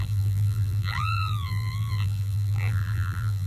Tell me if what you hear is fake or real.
fake